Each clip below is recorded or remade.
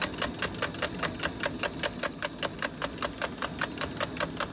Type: recorded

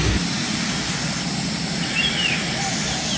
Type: recorded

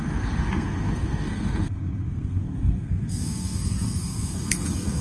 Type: remade